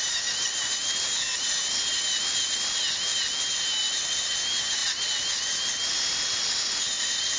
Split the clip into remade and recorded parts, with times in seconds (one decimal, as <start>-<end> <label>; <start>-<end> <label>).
0.0-7.4 recorded